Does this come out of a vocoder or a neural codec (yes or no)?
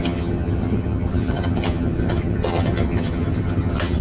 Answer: yes